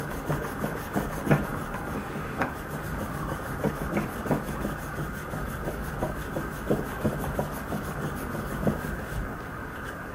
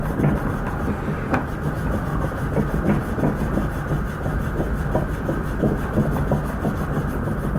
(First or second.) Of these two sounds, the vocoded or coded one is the first